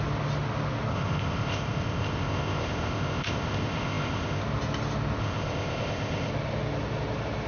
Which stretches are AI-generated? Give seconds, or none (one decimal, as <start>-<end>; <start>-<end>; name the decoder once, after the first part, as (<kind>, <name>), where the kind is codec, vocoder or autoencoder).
0.9-4.4 (codec, ZipCodec); 5.2-6.3